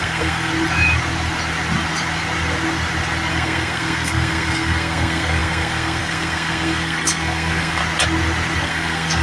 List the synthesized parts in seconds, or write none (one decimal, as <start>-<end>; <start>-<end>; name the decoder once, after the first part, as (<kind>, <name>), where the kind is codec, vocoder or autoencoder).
0.0-0.5 (codec, SNAC); 3.3-7.8; 8.6-9.2